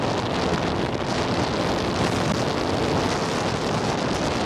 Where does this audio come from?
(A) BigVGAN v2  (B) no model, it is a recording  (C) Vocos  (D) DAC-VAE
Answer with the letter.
B